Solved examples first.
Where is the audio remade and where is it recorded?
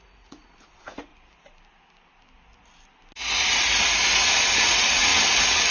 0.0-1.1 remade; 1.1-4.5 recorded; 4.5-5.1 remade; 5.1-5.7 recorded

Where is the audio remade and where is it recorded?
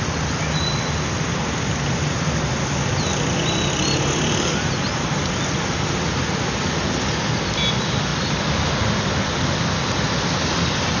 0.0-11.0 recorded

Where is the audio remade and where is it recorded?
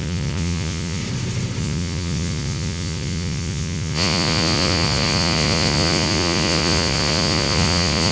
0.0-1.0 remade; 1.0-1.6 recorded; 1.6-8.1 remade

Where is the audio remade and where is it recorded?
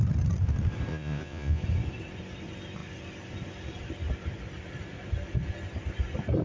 0.0-0.9 recorded; 0.9-1.6 remade; 1.6-6.4 recorded